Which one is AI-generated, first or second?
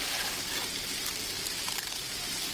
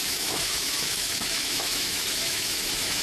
second